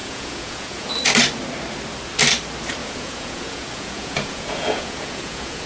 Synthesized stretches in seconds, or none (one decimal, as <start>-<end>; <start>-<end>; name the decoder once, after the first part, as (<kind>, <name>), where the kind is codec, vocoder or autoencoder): 0.0-0.9 (vocoder, Vocos); 2.8-5.7